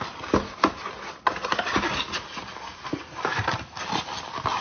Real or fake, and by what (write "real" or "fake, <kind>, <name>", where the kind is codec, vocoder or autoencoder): real